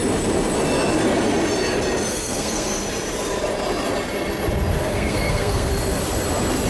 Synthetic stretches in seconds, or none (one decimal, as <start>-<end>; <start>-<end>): 2.1-2.8; 4.8-5.7